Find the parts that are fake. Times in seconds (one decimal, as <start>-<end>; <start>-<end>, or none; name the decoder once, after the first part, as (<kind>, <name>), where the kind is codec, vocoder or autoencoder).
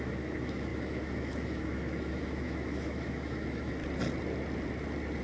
0.0-3.8 (autoencoder, DAC-VAE)